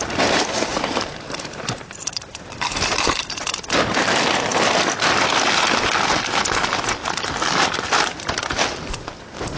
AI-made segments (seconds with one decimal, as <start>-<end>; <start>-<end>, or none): 0.7-4.0; 7.0-7.8